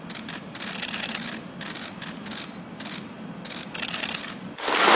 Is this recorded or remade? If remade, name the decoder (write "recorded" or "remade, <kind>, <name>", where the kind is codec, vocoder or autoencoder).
recorded